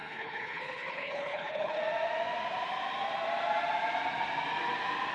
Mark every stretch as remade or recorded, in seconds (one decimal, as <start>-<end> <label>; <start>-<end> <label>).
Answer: 0.0-1.8 remade; 1.8-5.1 recorded